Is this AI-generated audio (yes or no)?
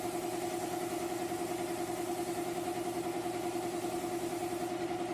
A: no